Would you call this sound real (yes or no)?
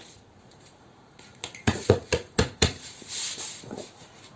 no